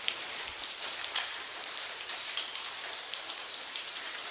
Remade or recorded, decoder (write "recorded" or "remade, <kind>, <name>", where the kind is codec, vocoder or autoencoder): remade, vocoder, BigVGAN v2